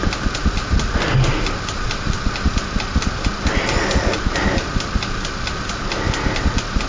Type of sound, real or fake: real